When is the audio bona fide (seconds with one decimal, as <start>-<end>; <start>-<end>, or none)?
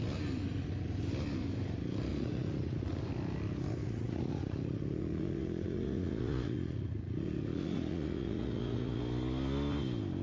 0.0-2.1; 3.0-3.8; 9.0-10.2